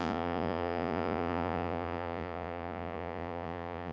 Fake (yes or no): yes